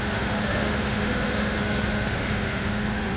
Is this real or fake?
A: fake